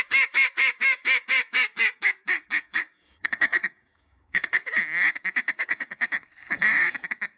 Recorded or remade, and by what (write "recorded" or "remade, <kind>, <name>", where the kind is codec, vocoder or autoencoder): remade, codec, DAC